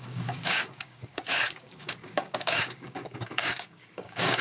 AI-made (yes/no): yes